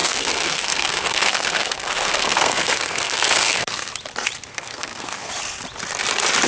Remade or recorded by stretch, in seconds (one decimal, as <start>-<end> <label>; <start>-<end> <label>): 0.0-3.9 remade; 3.9-4.5 recorded; 4.5-5.3 remade; 5.3-6.5 recorded